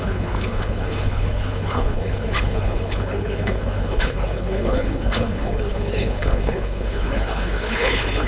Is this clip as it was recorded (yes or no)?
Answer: no